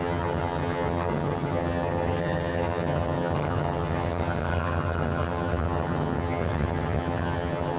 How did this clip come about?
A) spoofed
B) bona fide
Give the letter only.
A